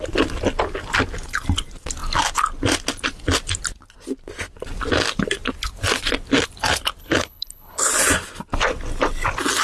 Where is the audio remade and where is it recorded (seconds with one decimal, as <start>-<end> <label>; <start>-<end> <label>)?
0.0-7.0 recorded; 7.0-7.9 remade; 7.9-9.6 recorded